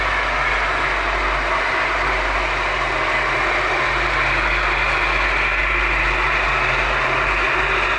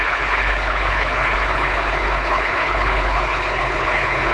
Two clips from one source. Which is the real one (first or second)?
first